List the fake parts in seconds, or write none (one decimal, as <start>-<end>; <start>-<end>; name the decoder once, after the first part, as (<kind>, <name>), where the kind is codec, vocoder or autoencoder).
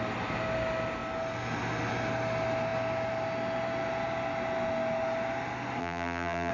5.8-6.5 (vocoder, BigVGAN v2)